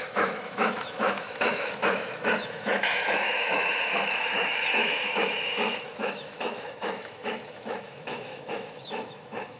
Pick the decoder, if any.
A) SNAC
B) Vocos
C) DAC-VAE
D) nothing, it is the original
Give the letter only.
C